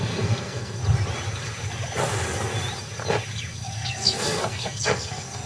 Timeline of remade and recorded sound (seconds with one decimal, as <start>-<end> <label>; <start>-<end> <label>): 0.0-0.8 remade; 0.8-3.5 recorded; 3.5-5.5 remade